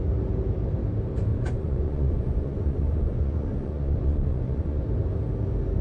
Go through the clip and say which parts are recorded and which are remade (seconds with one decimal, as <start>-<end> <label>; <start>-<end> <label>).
0.0-1.3 recorded; 1.3-4.8 remade; 4.8-5.8 recorded